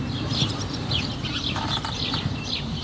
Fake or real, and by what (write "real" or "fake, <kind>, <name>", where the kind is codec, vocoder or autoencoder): fake, vocoder, BigVGAN v2